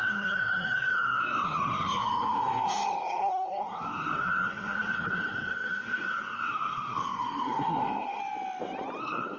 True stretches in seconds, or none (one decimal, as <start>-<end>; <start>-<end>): 8.2-9.0